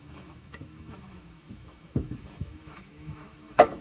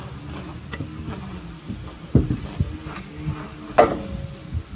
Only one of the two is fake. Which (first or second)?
first